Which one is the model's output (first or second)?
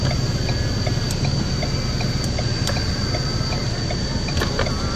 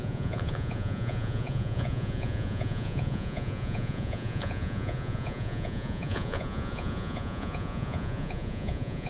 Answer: second